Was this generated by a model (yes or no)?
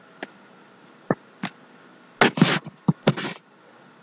no